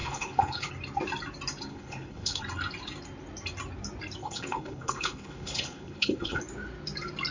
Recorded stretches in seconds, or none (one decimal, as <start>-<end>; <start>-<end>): 0.7-1.7; 2.4-4.2; 6.4-7.3